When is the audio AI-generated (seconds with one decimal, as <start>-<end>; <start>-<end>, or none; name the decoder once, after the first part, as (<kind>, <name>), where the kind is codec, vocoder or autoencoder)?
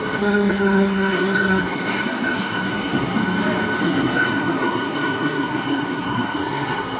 0.0-3.2 (codec, SNAC); 3.8-7.0